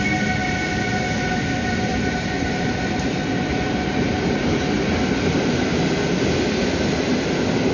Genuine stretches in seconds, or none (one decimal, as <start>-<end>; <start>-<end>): 0.0-1.9; 4.6-7.7